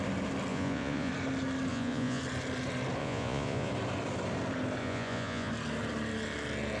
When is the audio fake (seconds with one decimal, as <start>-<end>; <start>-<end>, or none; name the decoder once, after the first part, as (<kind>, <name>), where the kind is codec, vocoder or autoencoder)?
0.5-1.1 (vocoder, Vocos); 1.7-2.2; 3.0-3.7; 4.8-5.5